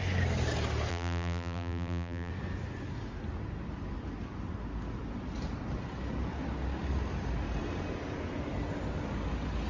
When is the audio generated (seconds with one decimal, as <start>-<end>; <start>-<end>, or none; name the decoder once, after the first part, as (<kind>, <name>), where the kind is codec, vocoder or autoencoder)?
0.9-2.3 (vocoder, BigVGAN v2)